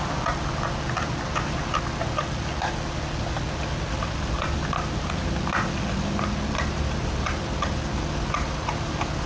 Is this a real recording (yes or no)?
yes